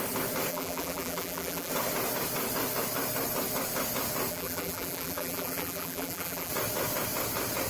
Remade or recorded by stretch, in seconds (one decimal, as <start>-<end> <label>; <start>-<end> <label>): 0.0-0.5 recorded; 0.5-1.7 remade; 1.7-4.3 recorded; 4.3-6.5 remade; 6.5-7.7 recorded